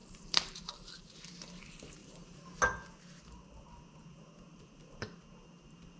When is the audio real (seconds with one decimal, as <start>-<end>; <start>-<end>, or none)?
1.6-2.0; 2.6-4.5; 5.2-6.0